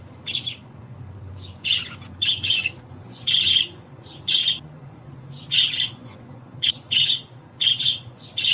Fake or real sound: fake